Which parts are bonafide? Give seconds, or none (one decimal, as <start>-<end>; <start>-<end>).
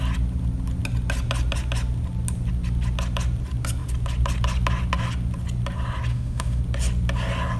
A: 0.0-6.1; 6.6-7.6